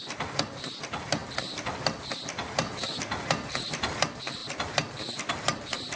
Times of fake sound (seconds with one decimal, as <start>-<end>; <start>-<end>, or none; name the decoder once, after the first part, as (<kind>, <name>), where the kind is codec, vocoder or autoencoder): none